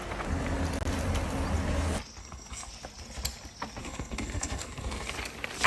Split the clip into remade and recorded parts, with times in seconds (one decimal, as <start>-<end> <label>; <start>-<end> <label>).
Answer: 0.0-2.2 recorded; 2.2-2.7 remade; 2.7-3.8 recorded; 3.8-5.1 remade; 5.1-5.7 recorded